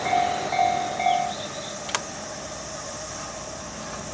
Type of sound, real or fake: real